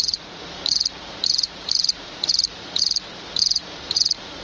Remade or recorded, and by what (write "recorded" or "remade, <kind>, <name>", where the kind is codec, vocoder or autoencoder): remade, vocoder, Vocos